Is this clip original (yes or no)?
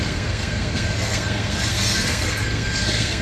no